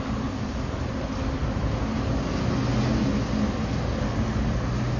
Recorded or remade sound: recorded